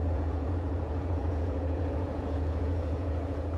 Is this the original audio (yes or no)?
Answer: no